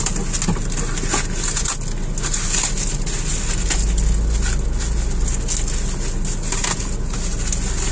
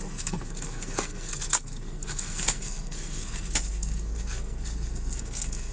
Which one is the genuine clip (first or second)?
first